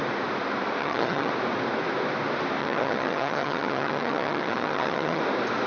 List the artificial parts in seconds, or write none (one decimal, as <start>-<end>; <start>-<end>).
0.8-1.3; 2.6-5.2